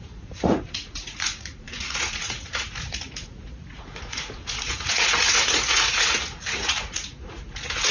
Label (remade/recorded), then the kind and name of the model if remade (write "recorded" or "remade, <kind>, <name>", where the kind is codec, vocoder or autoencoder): remade, vocoder, Vocos